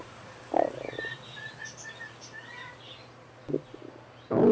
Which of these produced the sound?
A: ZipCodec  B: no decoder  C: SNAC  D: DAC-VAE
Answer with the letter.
B